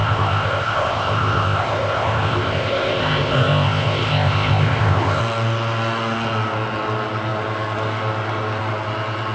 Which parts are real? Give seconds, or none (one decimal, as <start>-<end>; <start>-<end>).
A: 5.2-9.3